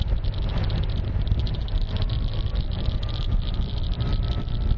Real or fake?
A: real